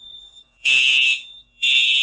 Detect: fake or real fake